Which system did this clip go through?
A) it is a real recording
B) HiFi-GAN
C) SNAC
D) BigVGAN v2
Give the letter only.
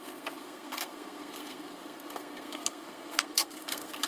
C